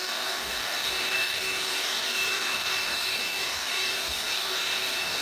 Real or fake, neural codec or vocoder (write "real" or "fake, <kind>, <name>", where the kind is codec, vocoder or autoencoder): fake, codec, DAC